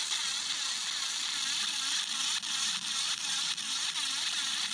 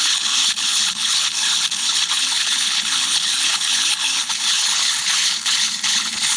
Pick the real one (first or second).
first